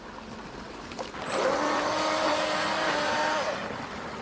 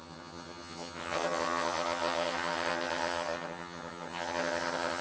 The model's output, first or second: second